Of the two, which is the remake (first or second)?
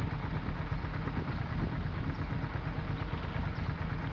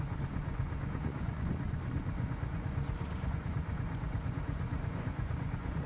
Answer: second